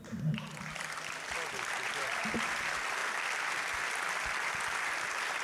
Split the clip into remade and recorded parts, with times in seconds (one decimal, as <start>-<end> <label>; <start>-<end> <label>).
0.0-5.4 recorded